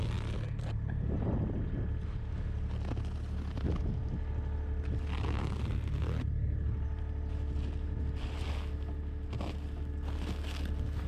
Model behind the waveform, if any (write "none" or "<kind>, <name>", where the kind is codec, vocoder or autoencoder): none